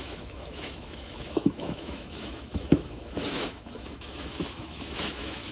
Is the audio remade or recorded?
remade